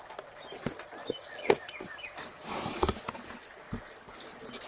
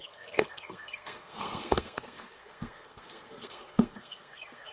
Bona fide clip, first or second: first